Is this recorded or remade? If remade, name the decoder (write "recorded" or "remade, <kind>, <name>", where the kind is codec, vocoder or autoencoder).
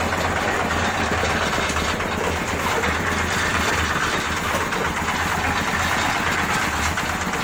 recorded